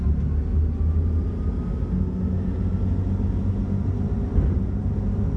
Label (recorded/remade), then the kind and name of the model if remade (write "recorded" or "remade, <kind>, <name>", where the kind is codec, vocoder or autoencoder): recorded